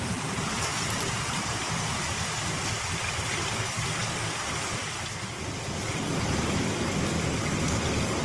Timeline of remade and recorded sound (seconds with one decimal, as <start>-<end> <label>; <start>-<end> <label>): 0.0-8.2 recorded